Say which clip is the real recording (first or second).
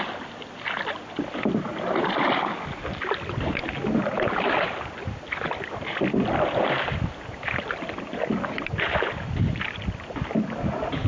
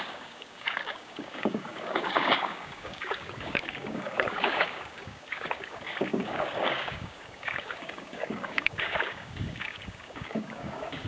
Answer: first